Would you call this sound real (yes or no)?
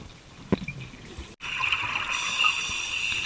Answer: yes